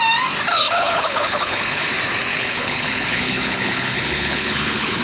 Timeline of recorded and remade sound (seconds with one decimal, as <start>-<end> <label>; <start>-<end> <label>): 0.0-0.5 recorded; 0.5-1.9 remade; 1.9-2.3 recorded; 2.3-5.0 remade